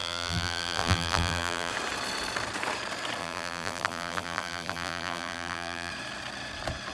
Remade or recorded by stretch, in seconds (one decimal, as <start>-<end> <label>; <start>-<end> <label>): 0.0-1.7 remade; 1.7-3.2 recorded; 3.2-5.9 remade; 5.9-6.9 recorded